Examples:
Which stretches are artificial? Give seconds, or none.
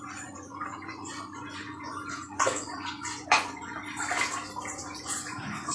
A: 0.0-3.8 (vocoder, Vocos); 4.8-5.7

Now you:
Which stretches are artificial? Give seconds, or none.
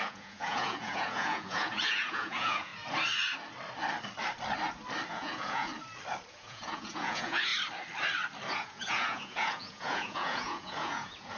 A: 0.0-2.7 (vocoder, Vocos); 5.1-5.7; 6.3-7.5; 8.5-11.4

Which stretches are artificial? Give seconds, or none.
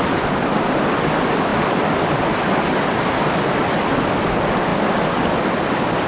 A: none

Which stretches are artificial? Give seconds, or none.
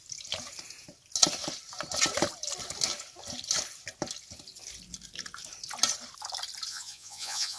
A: 6.7-7.6 (vocoder, Vocos)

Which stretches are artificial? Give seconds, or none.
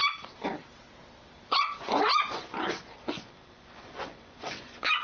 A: 1.5-5.0 (vocoder, Vocos)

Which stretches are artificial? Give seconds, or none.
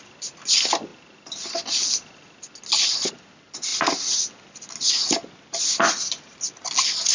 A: none